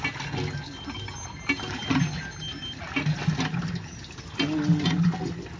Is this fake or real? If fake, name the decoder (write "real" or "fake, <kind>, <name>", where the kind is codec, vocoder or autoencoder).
real